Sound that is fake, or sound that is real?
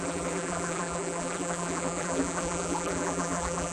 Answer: fake